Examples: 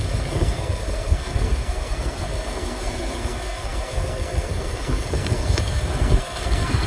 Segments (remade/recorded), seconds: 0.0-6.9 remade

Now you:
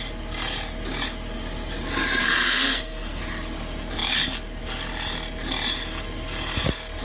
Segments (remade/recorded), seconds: 0.0-2.2 recorded; 2.2-3.2 remade; 3.2-7.0 recorded

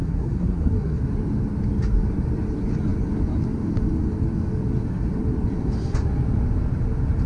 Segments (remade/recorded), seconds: 0.0-1.0 remade; 1.0-7.3 recorded